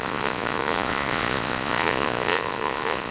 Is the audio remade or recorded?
remade